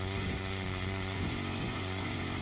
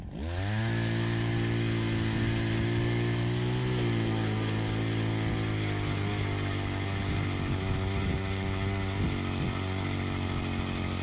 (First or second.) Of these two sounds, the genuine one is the second